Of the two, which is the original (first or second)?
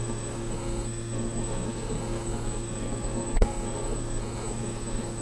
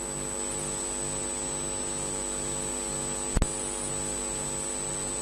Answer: second